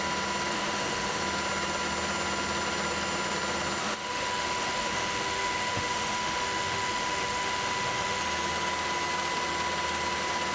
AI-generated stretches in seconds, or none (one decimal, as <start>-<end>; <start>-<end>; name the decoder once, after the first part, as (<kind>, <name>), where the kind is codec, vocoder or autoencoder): 0.5-1.2 (autoencoder, DAC-VAE); 3.8-8.2